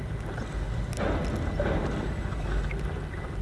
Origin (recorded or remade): recorded